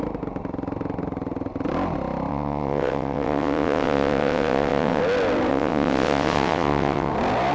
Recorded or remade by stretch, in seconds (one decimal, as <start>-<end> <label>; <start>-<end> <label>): 0.0-2.3 recorded; 2.3-5.0 remade; 5.0-5.5 recorded; 5.5-7.1 remade; 7.1-7.5 recorded